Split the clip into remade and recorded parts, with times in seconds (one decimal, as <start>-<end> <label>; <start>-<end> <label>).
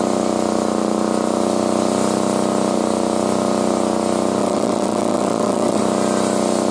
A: 0.0-4.4 recorded; 4.4-5.8 remade; 5.8-6.7 recorded